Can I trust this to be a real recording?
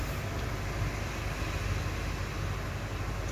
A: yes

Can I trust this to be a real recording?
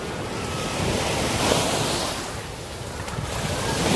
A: yes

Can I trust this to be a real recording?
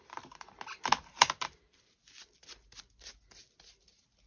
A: yes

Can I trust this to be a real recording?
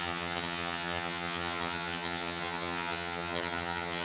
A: no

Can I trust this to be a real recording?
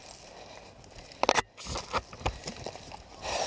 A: yes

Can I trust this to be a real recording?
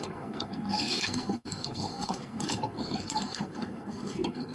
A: no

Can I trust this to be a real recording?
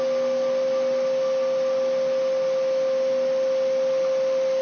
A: yes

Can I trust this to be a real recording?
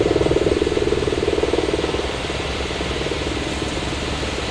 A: yes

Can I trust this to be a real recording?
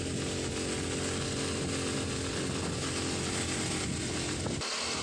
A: yes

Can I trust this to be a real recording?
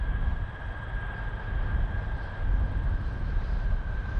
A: yes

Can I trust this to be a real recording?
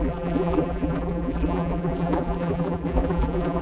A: no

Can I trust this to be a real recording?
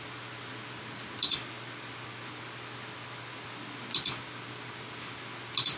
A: yes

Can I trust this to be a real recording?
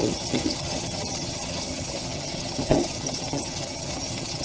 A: no